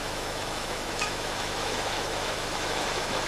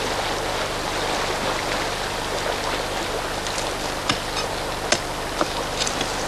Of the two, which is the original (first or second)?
second